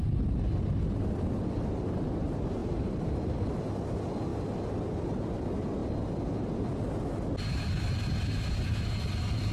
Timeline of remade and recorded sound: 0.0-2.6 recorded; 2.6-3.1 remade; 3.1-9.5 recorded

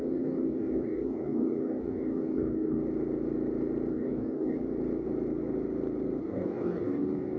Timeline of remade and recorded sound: 0.0-2.8 remade; 2.8-3.9 recorded; 3.9-4.6 remade; 4.6-6.2 recorded; 6.2-7.4 remade

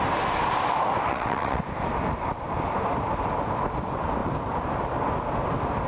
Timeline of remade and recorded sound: 0.0-1.1 recorded; 1.1-1.6 remade; 1.6-5.9 recorded

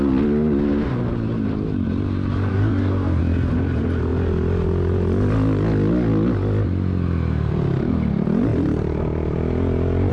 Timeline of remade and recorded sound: 0.0-2.5 recorded; 2.5-3.2 remade; 3.2-10.1 recorded

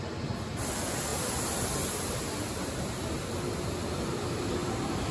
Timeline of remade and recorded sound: 0.0-5.1 recorded

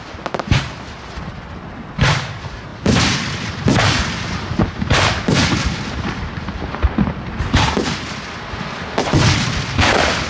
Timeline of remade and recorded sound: 0.0-2.7 recorded; 2.7-4.5 remade; 4.5-10.3 recorded

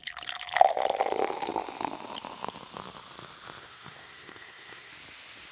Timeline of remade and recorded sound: 0.0-3.6 recorded; 3.6-4.9 remade; 4.9-5.5 recorded